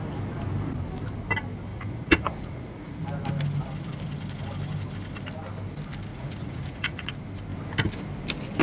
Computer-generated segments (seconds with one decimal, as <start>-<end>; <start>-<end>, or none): 1.7-3.0; 6.1-7.1

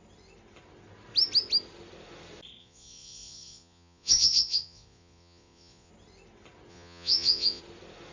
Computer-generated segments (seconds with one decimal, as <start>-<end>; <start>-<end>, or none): 2.6-5.9; 6.7-7.6

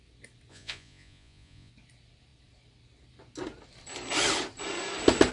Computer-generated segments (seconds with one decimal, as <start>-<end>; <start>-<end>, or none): 0.5-1.7

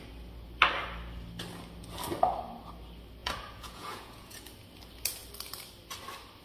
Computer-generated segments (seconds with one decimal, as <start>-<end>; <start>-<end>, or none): 3.2-4.4

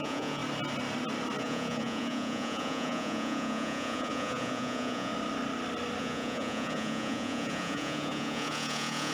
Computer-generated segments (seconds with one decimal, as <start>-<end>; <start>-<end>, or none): 0.0-0.4; 1.4-5.1; 6.0-9.1